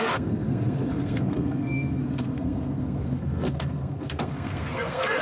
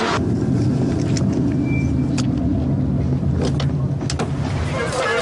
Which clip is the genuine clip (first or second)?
second